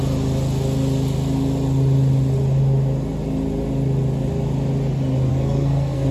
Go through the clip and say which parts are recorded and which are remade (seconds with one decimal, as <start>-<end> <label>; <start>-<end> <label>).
0.0-5.3 recorded; 5.3-6.1 remade